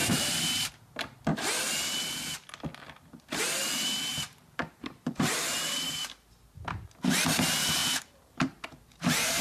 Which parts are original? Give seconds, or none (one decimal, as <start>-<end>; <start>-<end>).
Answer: 0.7-4.1; 6.0-7.8